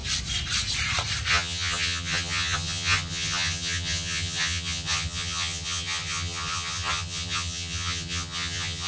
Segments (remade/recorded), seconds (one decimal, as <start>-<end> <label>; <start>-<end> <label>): 0.0-1.3 recorded; 1.3-8.9 remade